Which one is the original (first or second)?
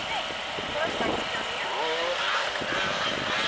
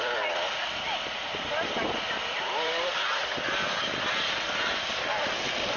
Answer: first